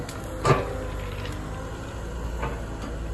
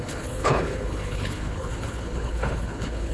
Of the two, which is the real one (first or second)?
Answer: first